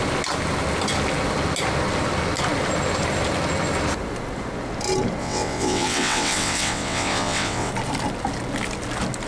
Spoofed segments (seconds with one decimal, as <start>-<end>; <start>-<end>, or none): 5.2-7.7